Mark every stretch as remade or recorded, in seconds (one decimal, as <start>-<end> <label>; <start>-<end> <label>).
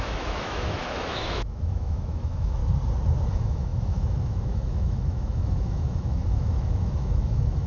0.0-2.6 remade; 2.6-3.3 recorded; 3.3-7.7 remade